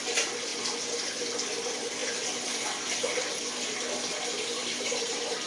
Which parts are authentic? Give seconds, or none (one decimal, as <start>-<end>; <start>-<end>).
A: 0.0-4.6